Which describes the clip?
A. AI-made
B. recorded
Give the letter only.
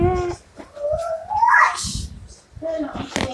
B